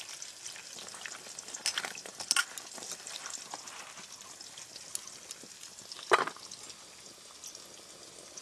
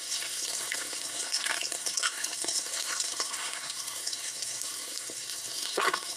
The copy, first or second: second